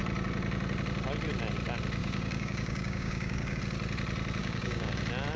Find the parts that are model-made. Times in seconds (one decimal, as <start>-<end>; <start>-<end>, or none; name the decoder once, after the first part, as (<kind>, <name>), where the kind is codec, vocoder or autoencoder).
2.0-3.6 (codec, DAC); 4.4-5.0